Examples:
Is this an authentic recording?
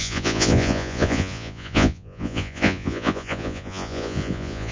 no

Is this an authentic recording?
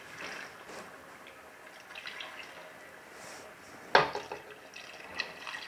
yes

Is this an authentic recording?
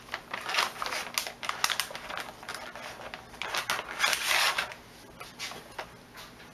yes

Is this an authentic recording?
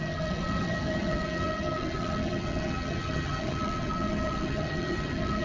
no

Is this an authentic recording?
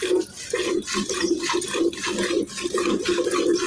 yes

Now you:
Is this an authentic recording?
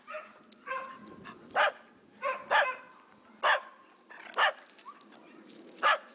yes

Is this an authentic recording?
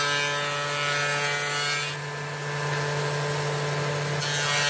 yes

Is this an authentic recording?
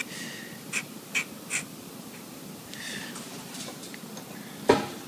yes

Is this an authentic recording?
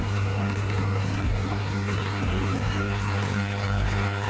no